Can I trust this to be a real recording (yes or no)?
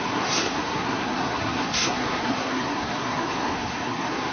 no